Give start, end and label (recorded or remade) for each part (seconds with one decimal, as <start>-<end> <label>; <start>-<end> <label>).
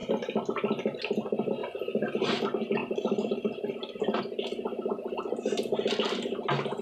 0.0-1.6 recorded; 1.6-2.3 remade; 2.3-2.8 recorded; 2.8-4.2 remade; 4.2-6.8 recorded